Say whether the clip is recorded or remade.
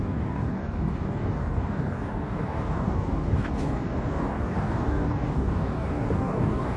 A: remade